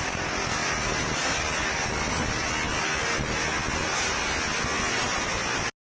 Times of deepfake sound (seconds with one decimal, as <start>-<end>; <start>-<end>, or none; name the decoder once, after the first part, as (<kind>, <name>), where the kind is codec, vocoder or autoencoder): none